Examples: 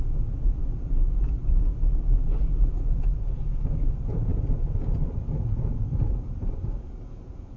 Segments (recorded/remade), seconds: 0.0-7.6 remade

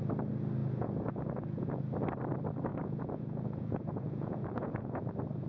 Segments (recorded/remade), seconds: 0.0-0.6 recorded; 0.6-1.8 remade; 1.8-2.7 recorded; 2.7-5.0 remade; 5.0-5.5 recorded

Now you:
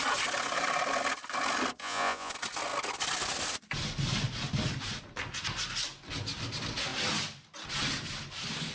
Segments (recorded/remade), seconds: 0.0-1.8 recorded; 1.8-2.3 remade; 2.3-8.7 recorded